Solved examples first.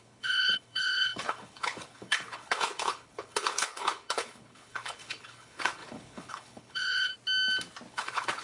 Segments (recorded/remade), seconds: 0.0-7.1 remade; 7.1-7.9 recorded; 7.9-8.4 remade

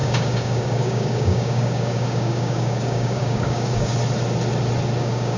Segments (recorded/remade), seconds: 0.0-3.9 remade; 3.9-5.0 recorded; 5.0-5.4 remade

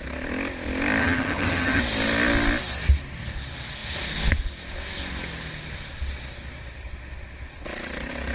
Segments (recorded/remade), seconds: 0.0-1.0 recorded; 1.0-1.8 remade; 1.8-8.3 recorded

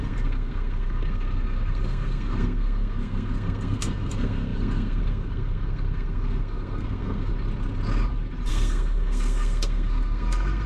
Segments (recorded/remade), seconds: 0.0-7.3 remade; 7.3-8.5 recorded; 8.5-10.7 remade

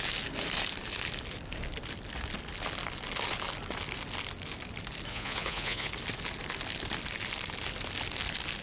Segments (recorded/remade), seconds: 0.0-5.1 recorded; 5.1-5.9 remade; 5.9-8.6 recorded